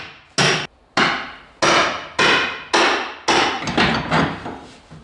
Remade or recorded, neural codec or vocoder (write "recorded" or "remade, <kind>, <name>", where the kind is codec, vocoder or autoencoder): recorded